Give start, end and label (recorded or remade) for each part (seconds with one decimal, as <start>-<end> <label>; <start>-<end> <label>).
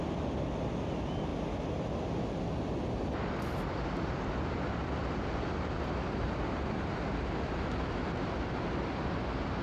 0.0-9.6 recorded